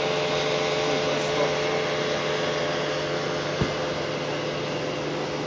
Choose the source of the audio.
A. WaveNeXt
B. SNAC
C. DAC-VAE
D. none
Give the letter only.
D